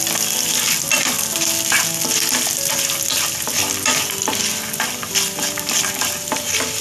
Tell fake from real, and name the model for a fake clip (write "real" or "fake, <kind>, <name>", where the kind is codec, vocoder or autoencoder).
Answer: real